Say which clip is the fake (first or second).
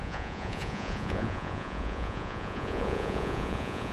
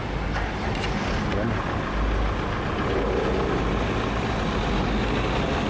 first